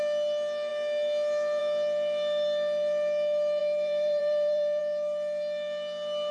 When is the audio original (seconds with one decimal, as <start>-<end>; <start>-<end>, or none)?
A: 0.0-3.6; 4.8-6.3